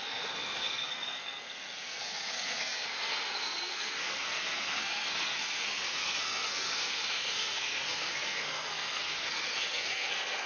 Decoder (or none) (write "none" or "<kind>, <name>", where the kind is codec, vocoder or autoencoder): codec, SNAC